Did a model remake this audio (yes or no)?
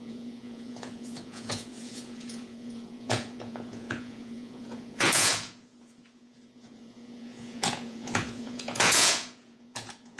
yes